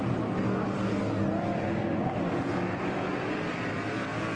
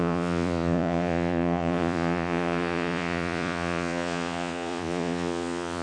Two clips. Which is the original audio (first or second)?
first